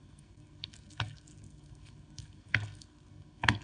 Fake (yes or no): yes